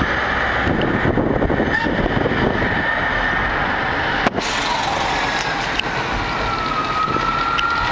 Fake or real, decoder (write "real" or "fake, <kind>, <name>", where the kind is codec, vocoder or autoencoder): real